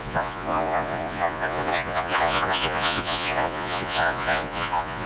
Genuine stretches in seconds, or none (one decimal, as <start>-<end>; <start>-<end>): none